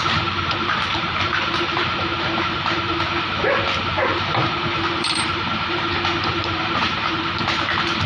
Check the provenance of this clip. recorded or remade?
remade